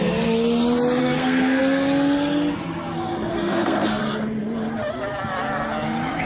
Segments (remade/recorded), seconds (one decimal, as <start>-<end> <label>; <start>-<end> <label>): 0.0-1.0 recorded; 1.0-1.6 remade; 1.6-3.3 recorded; 3.3-4.0 remade; 4.0-6.3 recorded